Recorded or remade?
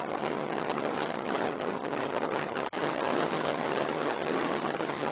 remade